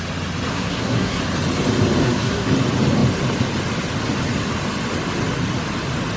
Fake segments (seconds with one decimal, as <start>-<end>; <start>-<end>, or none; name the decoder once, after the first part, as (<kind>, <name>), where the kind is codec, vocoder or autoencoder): 0.5-1.2 (codec, SNAC); 2.0-2.5